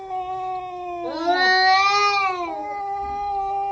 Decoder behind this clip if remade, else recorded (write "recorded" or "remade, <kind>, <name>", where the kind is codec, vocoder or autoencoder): recorded